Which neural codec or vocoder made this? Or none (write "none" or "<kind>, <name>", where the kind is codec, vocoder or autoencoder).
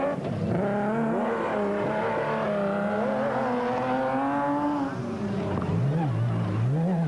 none